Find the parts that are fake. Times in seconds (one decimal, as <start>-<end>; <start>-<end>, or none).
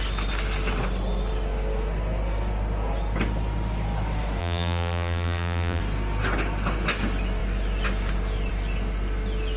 4.4-5.8